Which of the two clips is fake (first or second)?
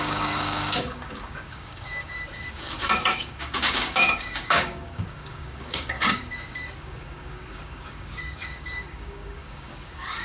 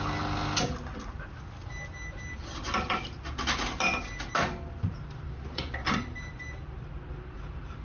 first